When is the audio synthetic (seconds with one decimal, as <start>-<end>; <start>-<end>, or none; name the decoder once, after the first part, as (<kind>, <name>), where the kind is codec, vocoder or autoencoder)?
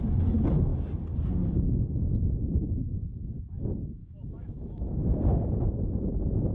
4.0-5.0 (autoencoder, DAC-VAE)